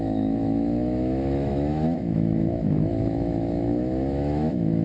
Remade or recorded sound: remade